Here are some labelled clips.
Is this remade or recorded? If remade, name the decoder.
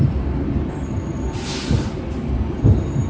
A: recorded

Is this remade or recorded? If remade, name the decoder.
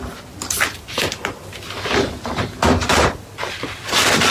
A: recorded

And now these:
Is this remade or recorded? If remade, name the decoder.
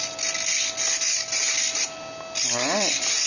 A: recorded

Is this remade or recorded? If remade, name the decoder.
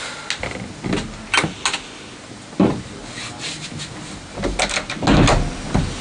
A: recorded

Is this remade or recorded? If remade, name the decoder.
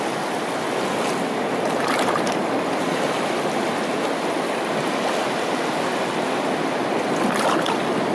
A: recorded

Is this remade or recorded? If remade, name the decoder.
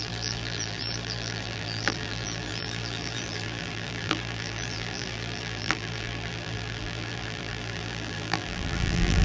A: remade, vocoder, BigVGAN v2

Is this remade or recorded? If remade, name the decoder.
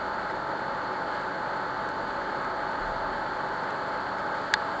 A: recorded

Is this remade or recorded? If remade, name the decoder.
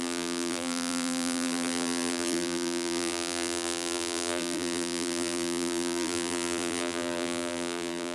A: remade, vocoder, BigVGAN v2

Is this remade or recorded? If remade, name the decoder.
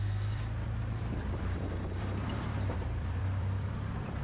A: remade, vocoder, BigVGAN v2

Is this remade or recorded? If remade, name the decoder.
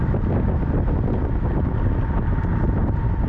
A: recorded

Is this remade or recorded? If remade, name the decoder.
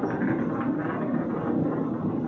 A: recorded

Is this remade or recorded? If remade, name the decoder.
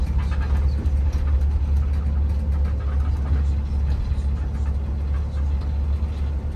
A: recorded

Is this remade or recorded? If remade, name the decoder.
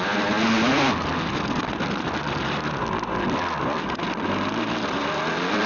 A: recorded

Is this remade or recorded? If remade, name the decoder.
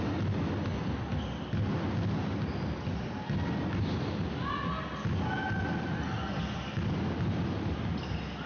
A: recorded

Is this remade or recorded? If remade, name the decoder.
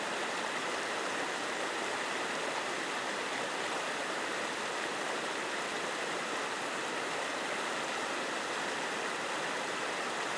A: remade, vocoder, BigVGAN v2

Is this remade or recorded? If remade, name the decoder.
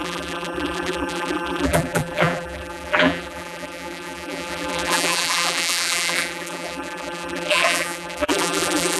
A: remade, vocoder, BigVGAN v2